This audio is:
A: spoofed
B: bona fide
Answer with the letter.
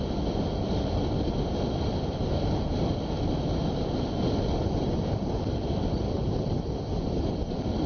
B